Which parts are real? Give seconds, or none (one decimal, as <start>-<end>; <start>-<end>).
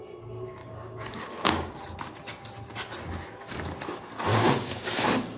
0.0-0.6; 1.8-4.3; 4.8-5.4